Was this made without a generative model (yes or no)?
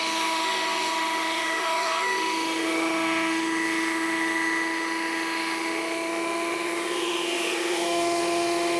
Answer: no